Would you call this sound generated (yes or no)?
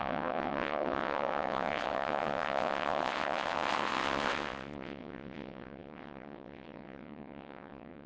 yes